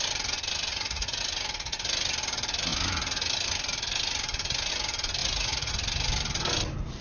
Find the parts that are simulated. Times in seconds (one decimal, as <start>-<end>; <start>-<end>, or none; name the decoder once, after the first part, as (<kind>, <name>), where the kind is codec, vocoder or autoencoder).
0.7-1.2 (vocoder, Vocos); 5.2-5.7